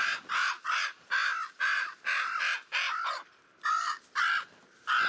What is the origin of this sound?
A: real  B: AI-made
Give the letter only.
A